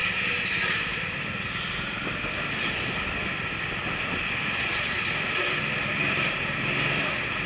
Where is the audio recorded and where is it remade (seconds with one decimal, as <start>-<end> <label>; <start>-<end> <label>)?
0.0-7.5 recorded